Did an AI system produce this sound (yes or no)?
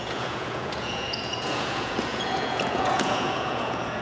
yes